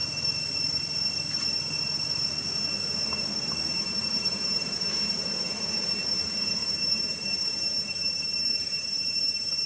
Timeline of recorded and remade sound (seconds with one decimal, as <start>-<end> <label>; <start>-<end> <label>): 0.0-3.8 recorded; 3.8-9.7 remade